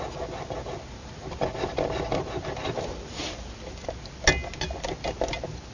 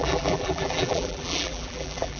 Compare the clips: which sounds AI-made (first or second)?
second